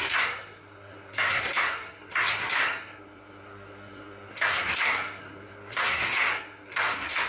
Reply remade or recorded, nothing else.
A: remade